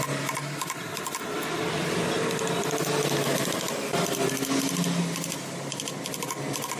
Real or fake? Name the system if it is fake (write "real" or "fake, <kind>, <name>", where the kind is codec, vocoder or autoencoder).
real